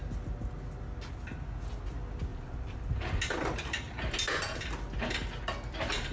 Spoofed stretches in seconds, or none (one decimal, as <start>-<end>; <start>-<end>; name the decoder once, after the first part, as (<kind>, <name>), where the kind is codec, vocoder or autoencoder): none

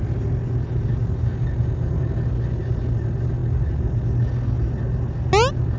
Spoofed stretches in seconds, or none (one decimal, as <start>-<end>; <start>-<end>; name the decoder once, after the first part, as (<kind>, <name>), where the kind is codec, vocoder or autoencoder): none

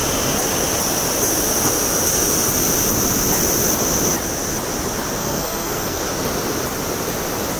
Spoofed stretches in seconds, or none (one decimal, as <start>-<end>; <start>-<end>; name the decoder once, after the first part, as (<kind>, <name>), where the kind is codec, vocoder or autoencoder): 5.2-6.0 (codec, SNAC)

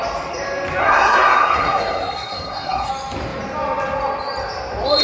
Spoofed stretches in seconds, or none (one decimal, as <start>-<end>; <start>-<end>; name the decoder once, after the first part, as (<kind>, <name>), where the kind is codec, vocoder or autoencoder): 0.8-2.9 (codec, SNAC)

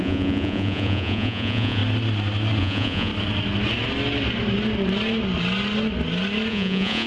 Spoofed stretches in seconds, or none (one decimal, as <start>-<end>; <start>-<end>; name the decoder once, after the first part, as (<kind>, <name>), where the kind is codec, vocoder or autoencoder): 0.0-1.8 (vocoder, Vocos); 2.6-3.1; 6.5-7.1